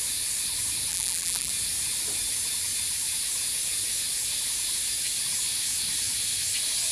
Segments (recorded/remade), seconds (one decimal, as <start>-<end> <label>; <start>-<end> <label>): 0.0-0.9 recorded; 0.9-1.5 remade; 1.5-6.9 recorded